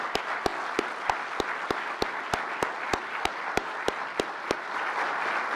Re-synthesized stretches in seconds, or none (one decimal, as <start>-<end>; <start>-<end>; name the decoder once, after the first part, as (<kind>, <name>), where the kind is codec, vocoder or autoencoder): none